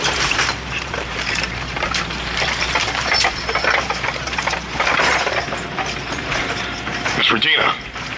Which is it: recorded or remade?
remade